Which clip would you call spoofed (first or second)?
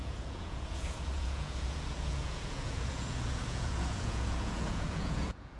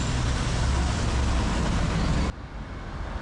first